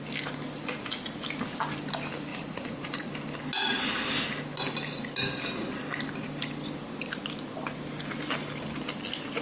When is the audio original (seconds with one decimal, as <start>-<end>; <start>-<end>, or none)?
0.0-2.3; 3.1-9.4